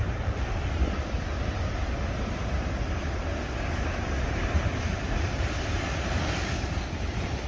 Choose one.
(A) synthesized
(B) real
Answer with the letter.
B